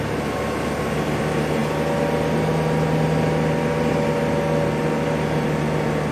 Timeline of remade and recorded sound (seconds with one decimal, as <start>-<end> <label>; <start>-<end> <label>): 0.0-6.1 recorded